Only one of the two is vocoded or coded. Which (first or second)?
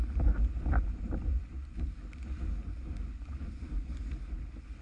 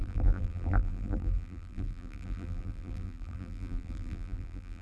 second